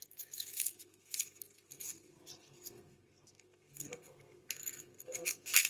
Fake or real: fake